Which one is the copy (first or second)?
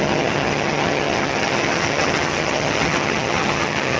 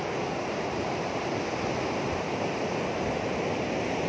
first